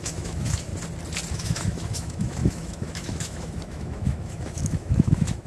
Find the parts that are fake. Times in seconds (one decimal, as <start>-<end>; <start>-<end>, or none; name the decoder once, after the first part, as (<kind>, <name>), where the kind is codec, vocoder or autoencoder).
0.0-0.7 (autoencoder, DAC-VAE); 1.3-5.5